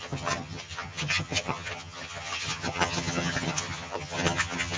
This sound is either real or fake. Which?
fake